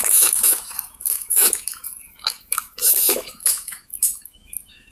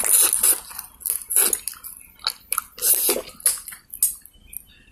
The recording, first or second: second